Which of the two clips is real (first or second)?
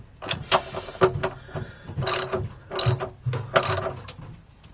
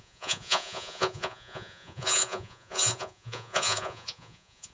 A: first